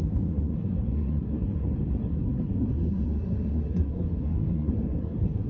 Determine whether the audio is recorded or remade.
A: remade